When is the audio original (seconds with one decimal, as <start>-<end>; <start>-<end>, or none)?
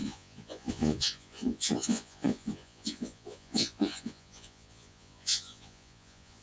none